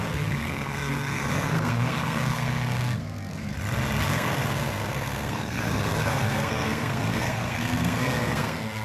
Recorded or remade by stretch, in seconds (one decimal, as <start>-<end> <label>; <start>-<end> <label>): 0.0-3.5 remade; 3.5-4.0 recorded; 4.0-8.8 remade

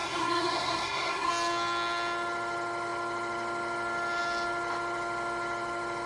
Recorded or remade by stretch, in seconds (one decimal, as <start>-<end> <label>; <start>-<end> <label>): 0.0-1.3 remade; 1.3-6.1 recorded

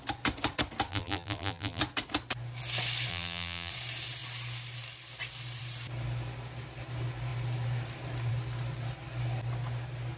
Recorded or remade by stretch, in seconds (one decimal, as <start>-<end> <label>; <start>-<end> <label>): 0.0-0.9 recorded; 0.9-1.8 remade; 1.8-3.1 recorded; 3.1-3.7 remade; 3.7-10.2 recorded

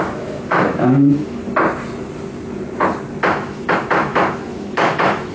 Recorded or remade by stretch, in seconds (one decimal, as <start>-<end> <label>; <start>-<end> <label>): 0.0-1.4 remade; 1.4-3.3 recorded; 3.3-5.3 remade

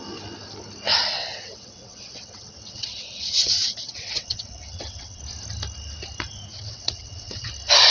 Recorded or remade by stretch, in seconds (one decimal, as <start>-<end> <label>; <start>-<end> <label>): 0.0-1.1 recorded; 1.1-5.2 remade; 5.2-6.5 recorded; 6.5-7.5 remade; 7.5-7.9 recorded

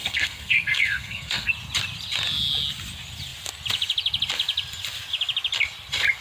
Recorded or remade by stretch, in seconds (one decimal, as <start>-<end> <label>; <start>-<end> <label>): 0.0-1.5 remade; 1.5-6.2 recorded

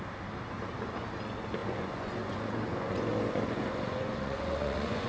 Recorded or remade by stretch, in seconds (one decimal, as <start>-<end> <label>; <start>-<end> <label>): 0.0-1.6 recorded; 1.6-5.1 remade

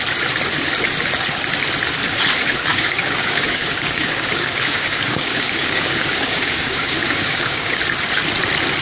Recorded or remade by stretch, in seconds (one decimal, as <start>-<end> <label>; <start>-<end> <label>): 0.0-2.7 recorded; 2.7-7.8 remade; 7.8-8.8 recorded